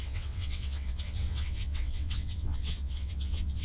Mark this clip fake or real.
fake